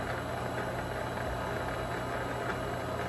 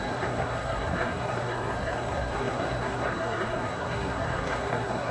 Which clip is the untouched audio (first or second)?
first